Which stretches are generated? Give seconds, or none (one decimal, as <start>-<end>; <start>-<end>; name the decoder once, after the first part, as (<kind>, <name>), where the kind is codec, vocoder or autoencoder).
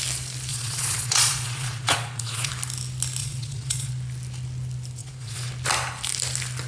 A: 0.5-2.5 (vocoder, Vocos); 3.2-3.9; 5.0-5.5